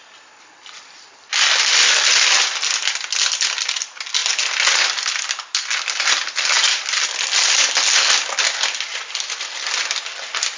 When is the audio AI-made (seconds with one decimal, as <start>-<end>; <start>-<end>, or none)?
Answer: none